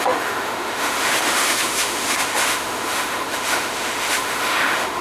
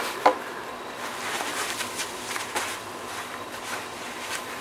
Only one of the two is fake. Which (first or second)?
first